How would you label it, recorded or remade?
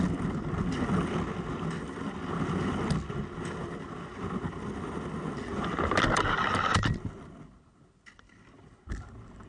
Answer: recorded